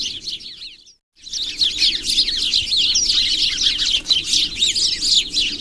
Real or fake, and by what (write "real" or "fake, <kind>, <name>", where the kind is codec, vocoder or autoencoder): real